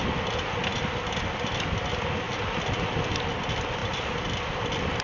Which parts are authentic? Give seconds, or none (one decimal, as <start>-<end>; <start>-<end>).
0.0-5.0